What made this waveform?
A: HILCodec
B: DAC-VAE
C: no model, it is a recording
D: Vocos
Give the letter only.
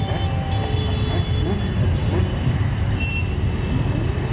C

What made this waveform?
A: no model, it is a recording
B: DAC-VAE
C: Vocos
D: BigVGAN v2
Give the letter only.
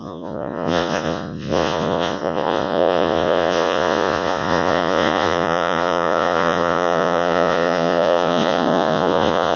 C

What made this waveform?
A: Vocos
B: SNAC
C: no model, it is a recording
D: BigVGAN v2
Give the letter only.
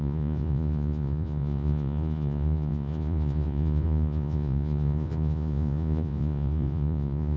A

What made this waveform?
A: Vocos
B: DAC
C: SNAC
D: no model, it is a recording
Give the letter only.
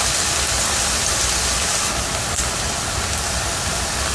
D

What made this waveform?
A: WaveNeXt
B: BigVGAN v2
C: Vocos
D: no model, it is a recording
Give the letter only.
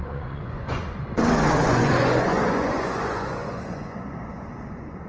C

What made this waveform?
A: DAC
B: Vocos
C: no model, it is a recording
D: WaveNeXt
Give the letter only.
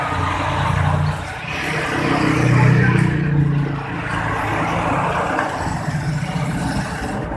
C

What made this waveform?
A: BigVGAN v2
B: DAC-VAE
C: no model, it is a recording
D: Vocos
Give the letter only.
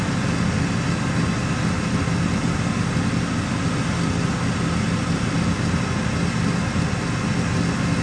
C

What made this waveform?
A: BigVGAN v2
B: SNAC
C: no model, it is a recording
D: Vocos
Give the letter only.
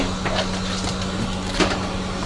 C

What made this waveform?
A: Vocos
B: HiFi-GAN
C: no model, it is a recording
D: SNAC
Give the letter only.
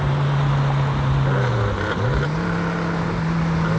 C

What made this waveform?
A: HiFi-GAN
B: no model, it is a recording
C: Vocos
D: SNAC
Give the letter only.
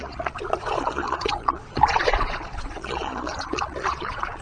C